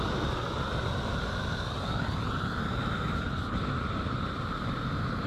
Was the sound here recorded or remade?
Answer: recorded